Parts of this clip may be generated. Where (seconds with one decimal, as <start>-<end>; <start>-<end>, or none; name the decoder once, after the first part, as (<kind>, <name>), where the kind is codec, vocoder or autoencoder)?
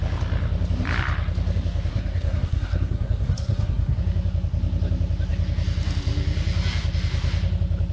1.9-4.0 (codec, SNAC)